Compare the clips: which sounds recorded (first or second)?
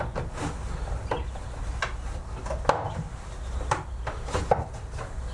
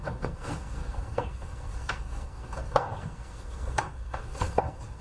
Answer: first